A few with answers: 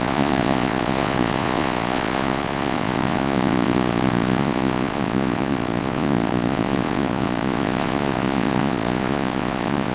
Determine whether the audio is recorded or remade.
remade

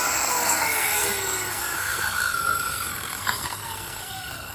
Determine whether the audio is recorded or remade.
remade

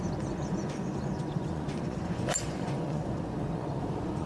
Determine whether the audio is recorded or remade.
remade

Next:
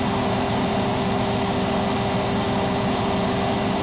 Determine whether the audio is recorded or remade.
recorded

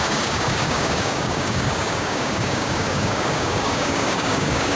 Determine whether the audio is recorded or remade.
remade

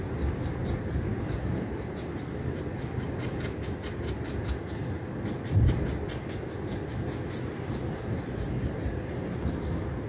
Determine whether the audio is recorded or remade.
recorded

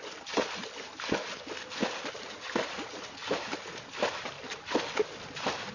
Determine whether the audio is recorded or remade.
recorded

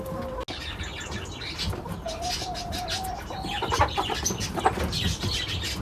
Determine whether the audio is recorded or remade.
recorded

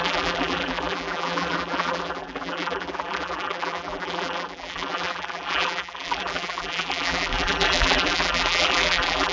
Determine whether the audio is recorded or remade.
remade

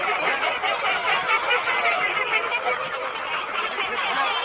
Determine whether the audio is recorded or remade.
recorded